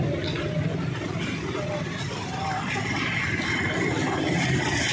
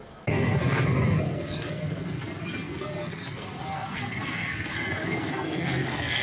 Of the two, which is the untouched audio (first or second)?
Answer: first